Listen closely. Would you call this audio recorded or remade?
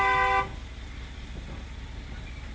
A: recorded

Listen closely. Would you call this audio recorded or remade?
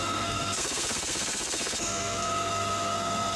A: remade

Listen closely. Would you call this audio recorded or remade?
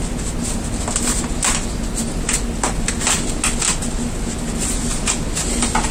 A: recorded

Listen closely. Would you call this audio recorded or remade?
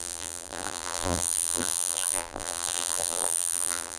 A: remade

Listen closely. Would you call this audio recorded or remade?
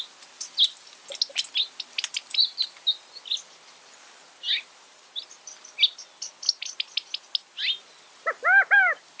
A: recorded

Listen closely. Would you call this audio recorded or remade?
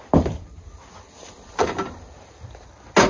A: recorded